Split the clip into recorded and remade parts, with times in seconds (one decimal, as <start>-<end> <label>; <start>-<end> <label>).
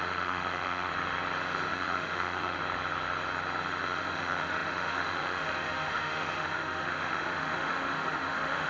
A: 0.0-0.9 remade; 0.9-1.7 recorded; 1.7-2.6 remade; 2.6-3.8 recorded; 3.8-8.7 remade